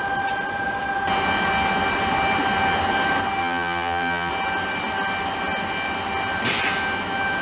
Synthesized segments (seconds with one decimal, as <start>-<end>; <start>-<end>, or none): 3.4-4.3